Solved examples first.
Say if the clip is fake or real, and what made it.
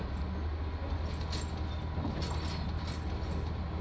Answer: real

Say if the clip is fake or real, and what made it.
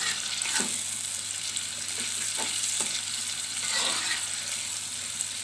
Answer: real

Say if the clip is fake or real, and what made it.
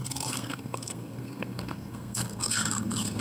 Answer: fake, codec, SNAC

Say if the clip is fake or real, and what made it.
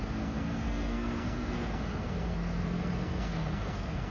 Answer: fake, codec, SNAC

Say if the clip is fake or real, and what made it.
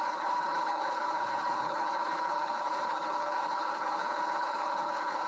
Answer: fake, codec, HILCodec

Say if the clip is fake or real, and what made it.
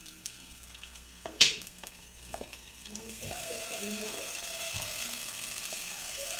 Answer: fake, codec, SNAC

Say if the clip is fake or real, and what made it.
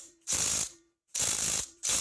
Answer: fake, vocoder, BigVGAN v2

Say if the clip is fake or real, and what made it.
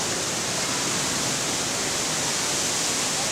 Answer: real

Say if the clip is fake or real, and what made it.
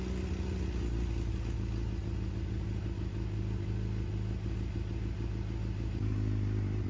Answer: real